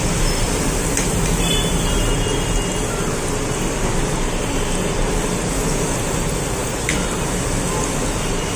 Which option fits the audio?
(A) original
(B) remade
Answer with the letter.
A